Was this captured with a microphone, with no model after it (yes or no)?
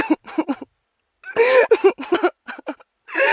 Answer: yes